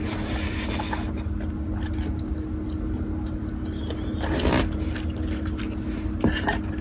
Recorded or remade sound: recorded